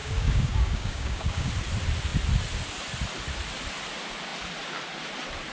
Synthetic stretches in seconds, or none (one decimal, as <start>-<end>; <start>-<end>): 0.0-1.5